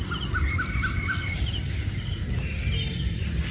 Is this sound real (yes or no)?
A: yes